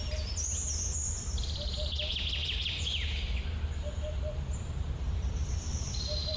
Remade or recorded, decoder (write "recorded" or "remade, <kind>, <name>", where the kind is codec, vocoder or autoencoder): remade, vocoder, BigVGAN v2